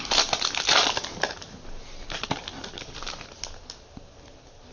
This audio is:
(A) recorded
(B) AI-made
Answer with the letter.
A